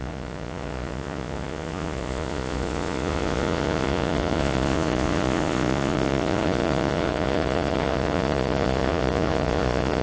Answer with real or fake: fake